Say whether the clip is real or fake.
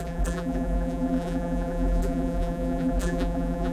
fake